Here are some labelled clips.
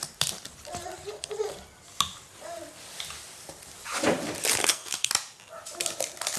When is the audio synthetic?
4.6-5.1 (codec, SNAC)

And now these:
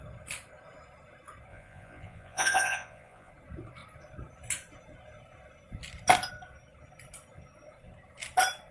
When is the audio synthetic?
1.5-3.3 (vocoder, Vocos)

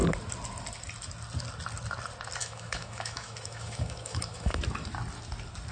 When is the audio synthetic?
2.4-4.6 (autoencoder, DAC-VAE)

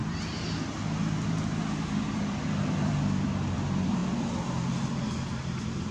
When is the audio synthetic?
0.0-5.9 (vocoder, BigVGAN v2)

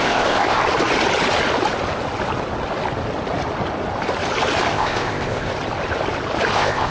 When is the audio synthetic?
0.0-0.6 (codec, ZipCodec); 4.7-5.5; 6.5-6.9

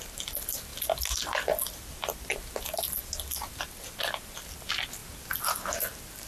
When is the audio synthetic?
none

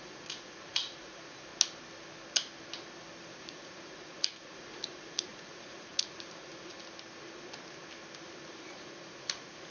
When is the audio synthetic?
0.0-1.5 (vocoder, Vocos); 3.3-6.5; 8.5-9.7